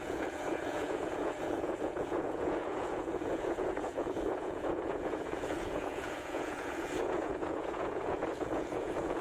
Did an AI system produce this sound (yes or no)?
yes